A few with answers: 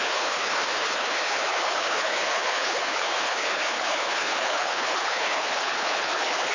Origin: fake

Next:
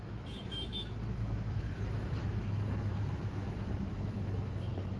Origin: fake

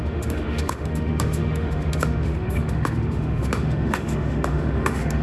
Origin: fake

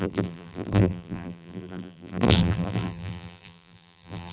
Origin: fake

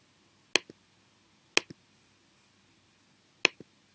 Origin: real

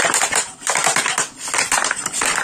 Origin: real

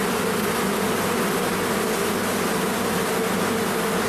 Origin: real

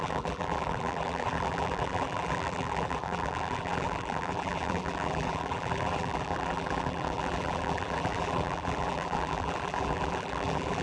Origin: fake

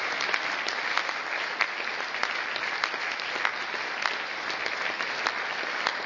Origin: real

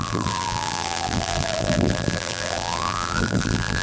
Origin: fake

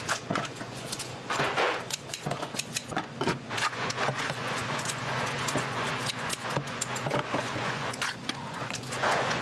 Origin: fake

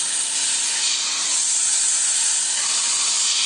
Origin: real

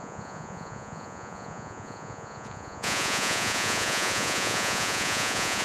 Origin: fake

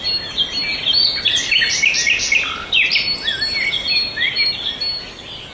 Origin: real